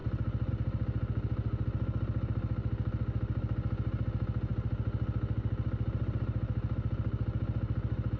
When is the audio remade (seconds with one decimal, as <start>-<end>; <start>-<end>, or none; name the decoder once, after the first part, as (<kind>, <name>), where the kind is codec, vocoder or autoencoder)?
none